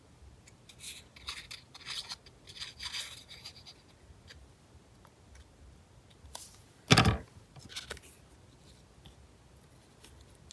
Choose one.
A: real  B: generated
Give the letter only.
A